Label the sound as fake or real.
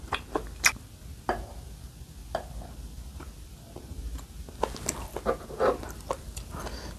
real